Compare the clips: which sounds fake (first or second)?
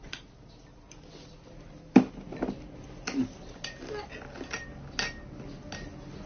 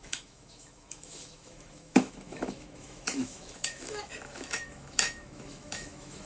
second